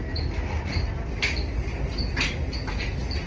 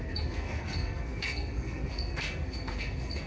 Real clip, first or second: first